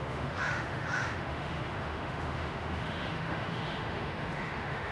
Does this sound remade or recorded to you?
remade